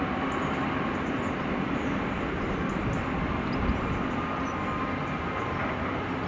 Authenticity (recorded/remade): remade